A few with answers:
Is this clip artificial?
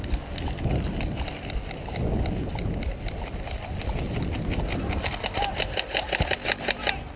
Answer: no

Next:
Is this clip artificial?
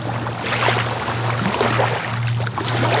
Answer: no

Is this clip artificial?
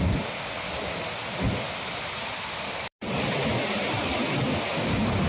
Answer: no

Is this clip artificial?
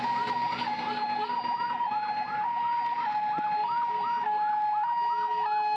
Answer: no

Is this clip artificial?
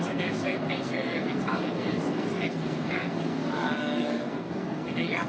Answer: yes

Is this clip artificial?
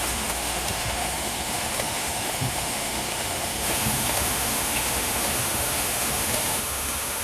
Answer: yes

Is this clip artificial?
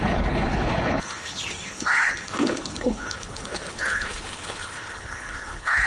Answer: yes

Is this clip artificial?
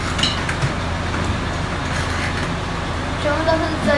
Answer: no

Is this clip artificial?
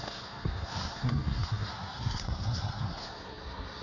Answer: yes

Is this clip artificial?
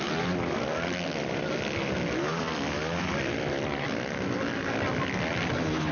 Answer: no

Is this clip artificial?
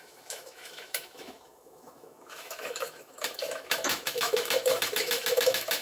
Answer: yes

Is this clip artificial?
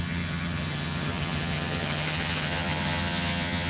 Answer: yes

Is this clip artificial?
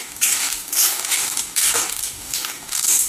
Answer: yes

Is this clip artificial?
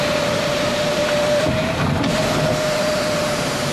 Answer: yes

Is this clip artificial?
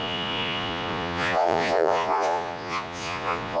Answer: yes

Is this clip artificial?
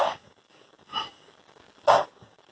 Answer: yes